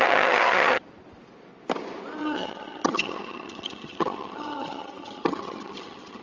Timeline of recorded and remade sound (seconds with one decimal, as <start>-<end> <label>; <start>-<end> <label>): 0.0-0.8 remade; 0.8-2.2 recorded; 2.2-6.2 remade